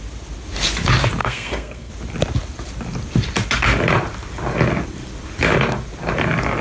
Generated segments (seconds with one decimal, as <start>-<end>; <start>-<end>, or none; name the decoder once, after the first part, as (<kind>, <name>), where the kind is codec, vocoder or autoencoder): 1.2-1.9 (codec, SNAC)